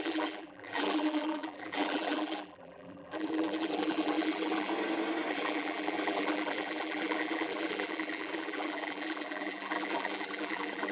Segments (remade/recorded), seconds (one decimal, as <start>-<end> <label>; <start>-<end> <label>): 0.0-4.7 remade; 4.7-5.3 recorded; 5.3-10.9 remade